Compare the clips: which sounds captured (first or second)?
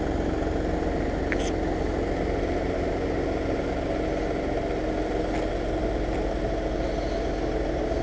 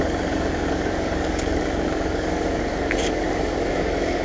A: first